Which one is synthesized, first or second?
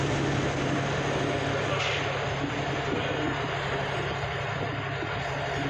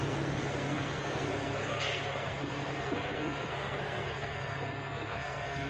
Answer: second